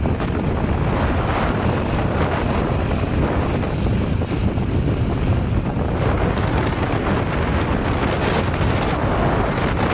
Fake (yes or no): no